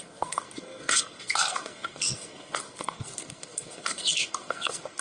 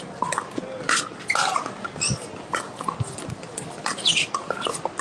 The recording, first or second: second